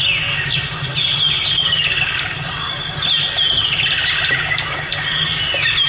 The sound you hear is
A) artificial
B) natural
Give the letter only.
B